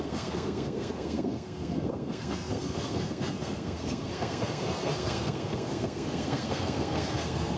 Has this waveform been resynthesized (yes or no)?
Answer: yes